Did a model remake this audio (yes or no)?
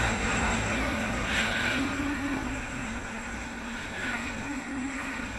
yes